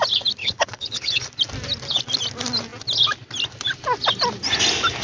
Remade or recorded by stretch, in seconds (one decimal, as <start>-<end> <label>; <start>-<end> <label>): 0.0-0.4 recorded; 0.4-1.2 remade; 1.2-5.0 recorded